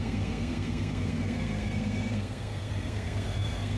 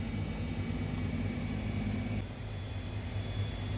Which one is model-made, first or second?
first